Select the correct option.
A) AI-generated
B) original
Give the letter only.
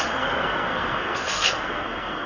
A